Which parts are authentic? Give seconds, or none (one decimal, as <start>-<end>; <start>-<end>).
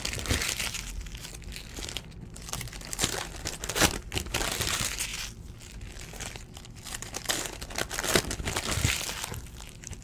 0.0-10.0